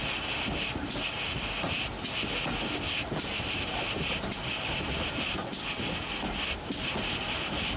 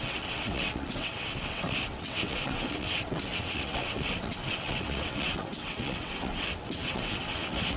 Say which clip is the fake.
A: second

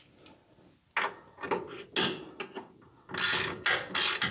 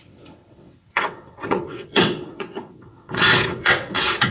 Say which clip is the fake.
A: second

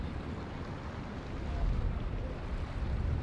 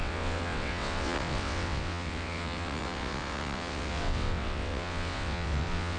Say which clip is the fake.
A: second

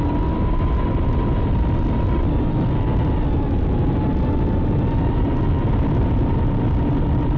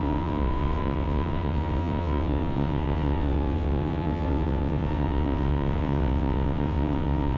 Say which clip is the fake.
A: second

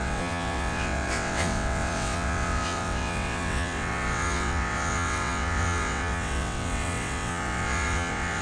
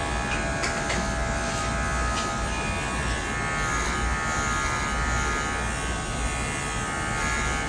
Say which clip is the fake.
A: first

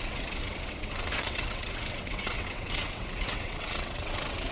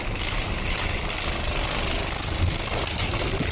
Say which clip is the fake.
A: first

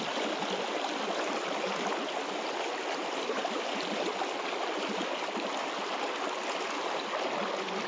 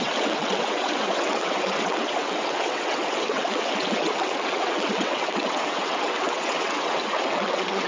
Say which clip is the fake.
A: second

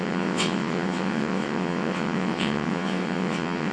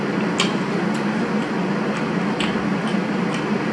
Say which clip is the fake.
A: first